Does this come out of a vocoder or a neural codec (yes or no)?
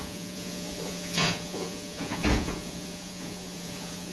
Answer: yes